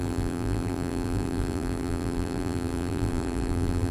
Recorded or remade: remade